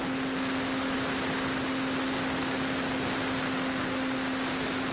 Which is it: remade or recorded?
recorded